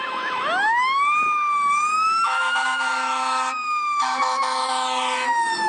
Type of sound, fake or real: fake